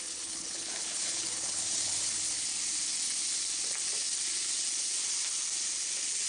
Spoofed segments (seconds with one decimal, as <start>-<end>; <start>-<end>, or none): 0.0-2.5